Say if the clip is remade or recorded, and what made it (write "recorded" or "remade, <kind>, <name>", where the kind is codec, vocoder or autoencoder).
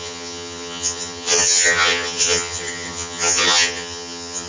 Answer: remade, vocoder, HiFi-GAN